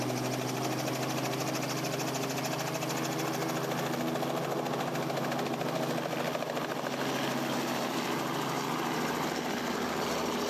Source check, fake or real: real